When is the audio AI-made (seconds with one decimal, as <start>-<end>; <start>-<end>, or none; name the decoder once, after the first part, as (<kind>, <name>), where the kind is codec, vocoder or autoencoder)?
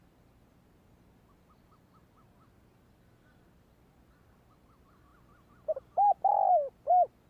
none